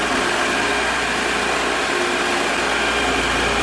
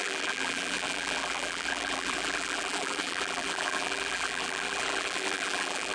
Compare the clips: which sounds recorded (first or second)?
first